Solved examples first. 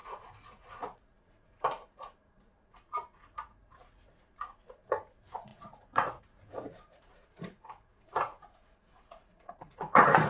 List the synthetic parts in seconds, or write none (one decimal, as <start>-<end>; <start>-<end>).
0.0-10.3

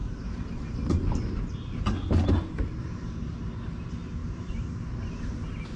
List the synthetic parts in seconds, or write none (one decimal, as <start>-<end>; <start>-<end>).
0.0-3.5; 4.2-4.7

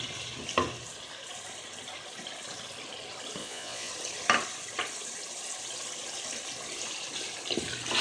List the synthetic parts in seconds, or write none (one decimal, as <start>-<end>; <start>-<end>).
3.4-3.9